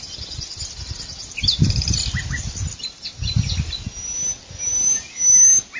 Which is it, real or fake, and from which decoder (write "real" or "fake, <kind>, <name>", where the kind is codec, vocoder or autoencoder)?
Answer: real